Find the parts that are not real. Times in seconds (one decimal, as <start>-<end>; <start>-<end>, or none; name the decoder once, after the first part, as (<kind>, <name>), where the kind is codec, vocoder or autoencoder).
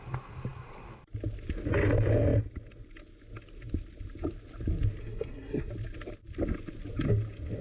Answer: 5.0-5.7 (codec, SNAC)